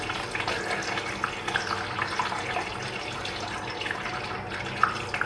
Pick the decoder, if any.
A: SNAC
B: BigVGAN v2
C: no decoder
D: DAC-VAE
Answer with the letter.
C